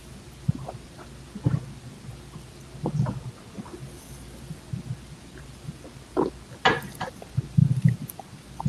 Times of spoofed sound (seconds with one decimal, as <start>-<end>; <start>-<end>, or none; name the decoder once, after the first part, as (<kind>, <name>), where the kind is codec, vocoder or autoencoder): none

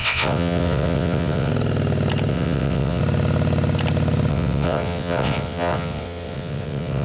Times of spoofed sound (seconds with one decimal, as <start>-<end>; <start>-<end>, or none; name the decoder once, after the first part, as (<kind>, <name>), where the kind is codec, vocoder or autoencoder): 0.0-1.5 (vocoder, WaveNeXt); 2.3-3.0; 4.3-7.0

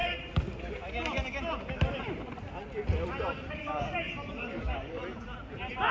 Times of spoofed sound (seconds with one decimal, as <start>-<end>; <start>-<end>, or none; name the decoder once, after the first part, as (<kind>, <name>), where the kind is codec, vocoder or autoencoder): 3.5-5.0 (codec, DAC)

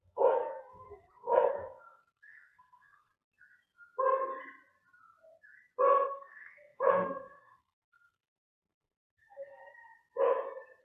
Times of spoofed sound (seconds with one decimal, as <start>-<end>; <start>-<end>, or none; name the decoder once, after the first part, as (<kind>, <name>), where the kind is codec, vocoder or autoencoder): 0.0-3.1 (codec, SNAC); 6.1-9.6

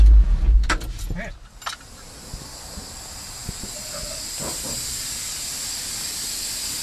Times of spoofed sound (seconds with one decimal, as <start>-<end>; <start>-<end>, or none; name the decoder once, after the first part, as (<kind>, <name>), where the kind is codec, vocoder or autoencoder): none

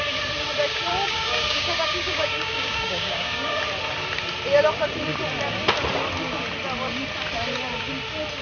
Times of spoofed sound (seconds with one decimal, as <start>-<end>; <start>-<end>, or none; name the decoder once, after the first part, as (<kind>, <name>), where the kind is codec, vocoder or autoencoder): 0.9-3.6 (codec, DAC)